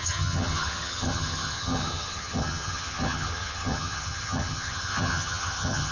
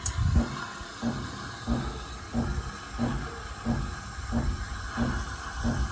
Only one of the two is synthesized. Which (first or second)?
first